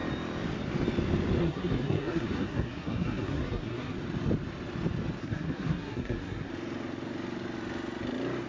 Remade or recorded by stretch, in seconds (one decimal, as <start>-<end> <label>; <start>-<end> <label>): 0.0-1.4 recorded; 1.4-3.9 remade; 3.9-5.2 recorded; 5.2-6.5 remade; 6.5-8.5 recorded